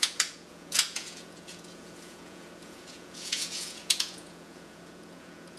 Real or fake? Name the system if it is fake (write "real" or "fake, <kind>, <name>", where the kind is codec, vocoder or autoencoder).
fake, vocoder, Vocos